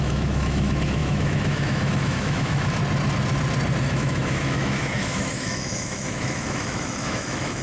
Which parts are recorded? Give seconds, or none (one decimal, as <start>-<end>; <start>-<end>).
2.8-3.8